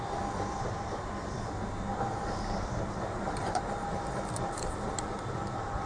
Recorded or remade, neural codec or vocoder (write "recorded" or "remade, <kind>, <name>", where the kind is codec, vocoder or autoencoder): remade, vocoder, BigVGAN v2